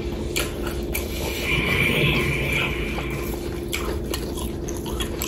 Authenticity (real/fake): real